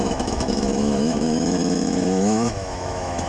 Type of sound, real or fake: fake